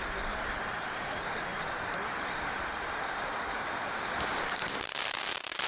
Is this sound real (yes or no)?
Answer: no